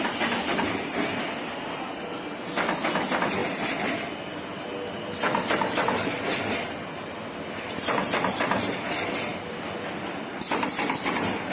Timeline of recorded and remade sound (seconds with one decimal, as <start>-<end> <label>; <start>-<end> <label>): 0.0-11.5 recorded